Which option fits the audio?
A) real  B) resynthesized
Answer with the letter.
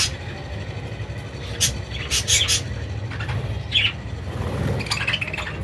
A